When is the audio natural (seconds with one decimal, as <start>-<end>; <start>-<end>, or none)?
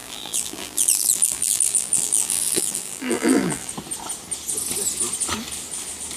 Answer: 3.7-6.2